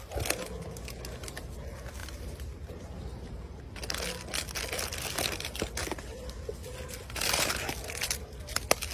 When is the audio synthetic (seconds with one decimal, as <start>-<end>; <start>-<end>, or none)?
2.0-3.6